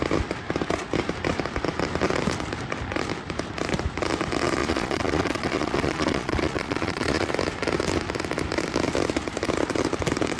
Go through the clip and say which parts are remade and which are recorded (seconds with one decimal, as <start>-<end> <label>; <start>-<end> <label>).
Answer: 0.0-4.6 recorded; 4.6-7.3 remade; 7.3-10.4 recorded